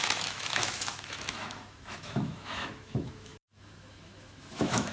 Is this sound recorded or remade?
remade